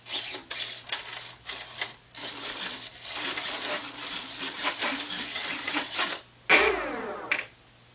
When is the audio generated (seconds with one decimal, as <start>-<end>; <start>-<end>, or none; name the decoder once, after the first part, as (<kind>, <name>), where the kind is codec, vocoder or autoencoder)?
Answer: 5.3-6.0 (vocoder, WaveNeXt)